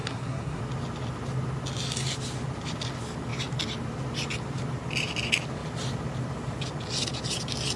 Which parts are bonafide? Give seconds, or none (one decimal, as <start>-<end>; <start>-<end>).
0.6-7.8